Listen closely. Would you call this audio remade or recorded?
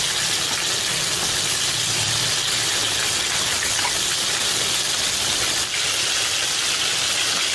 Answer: recorded